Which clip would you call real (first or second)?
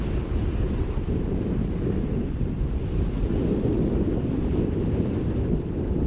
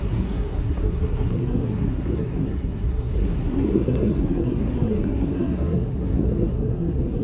first